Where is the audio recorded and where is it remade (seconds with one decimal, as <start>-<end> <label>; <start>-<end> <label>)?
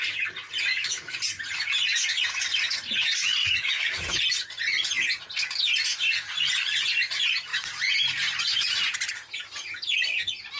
0.0-0.7 recorded; 0.7-1.2 remade; 1.2-3.4 recorded; 3.4-4.2 remade; 4.2-10.6 recorded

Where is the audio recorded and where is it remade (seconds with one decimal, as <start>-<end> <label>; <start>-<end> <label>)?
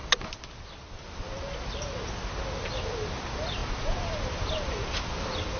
0.0-5.6 recorded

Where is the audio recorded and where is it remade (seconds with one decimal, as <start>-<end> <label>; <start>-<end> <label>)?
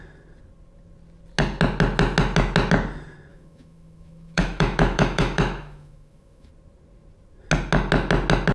0.0-3.3 recorded; 3.3-6.5 remade; 6.5-8.5 recorded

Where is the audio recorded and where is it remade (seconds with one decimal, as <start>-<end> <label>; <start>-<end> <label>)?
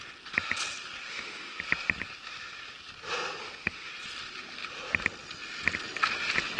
0.0-1.1 recorded; 1.1-1.6 remade; 1.6-3.4 recorded; 3.4-3.9 remade; 3.9-6.6 recorded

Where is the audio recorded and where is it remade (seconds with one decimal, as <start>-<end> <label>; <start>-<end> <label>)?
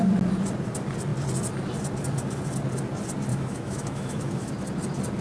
0.0-3.3 recorded; 3.3-4.5 remade; 4.5-5.2 recorded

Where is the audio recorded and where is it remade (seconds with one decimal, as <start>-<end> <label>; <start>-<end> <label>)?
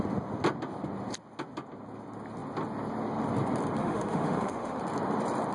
0.0-3.8 recorded; 3.8-4.8 remade; 4.8-5.5 recorded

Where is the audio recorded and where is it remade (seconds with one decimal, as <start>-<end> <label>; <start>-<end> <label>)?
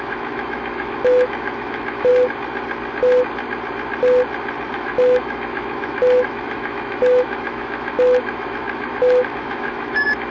0.0-2.1 remade; 2.1-4.7 recorded; 4.7-10.3 remade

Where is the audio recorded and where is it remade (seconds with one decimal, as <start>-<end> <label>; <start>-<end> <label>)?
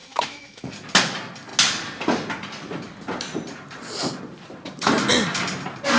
0.0-0.7 remade; 0.7-6.0 recorded